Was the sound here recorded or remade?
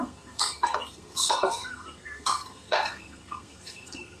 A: remade